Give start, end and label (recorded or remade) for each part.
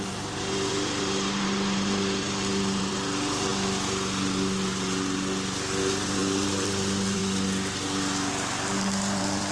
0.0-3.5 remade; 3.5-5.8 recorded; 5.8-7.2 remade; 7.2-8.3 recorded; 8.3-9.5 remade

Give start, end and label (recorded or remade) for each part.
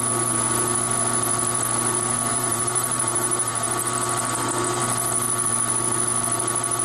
0.0-2.3 recorded; 2.3-3.7 remade; 3.7-6.8 recorded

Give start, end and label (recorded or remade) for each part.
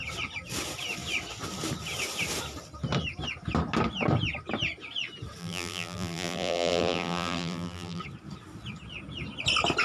0.0-5.4 recorded; 5.4-8.0 remade; 8.0-9.8 recorded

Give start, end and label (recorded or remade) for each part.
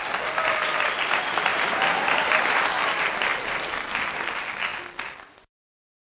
0.0-1.5 recorded; 1.5-2.6 remade; 2.6-6.0 recorded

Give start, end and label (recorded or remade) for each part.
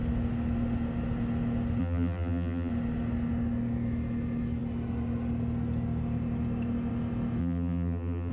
0.0-1.8 recorded; 1.8-2.7 remade; 2.7-7.4 recorded; 7.4-8.3 remade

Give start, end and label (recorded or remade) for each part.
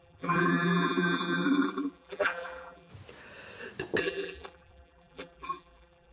0.0-2.9 remade; 2.9-4.0 recorded; 4.0-6.1 remade